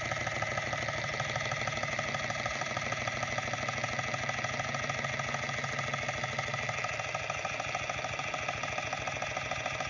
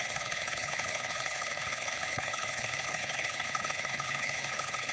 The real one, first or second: first